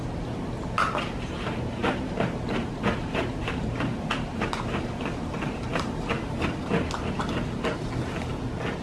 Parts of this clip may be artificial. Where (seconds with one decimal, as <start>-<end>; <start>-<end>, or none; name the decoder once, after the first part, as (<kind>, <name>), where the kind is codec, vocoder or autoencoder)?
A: 1.8-6.1 (vocoder, BigVGAN v2)